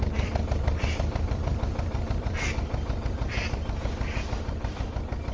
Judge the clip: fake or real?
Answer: fake